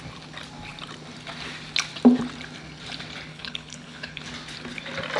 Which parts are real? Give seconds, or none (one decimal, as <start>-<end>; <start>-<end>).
0.0-3.3; 4.2-5.2

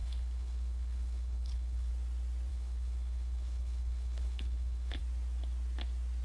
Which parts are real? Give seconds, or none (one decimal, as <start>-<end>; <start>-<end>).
1.9-2.5; 5.0-6.2

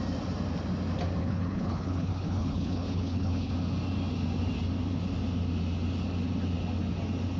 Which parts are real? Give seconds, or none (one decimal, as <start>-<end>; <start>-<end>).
0.0-1.2; 3.5-7.4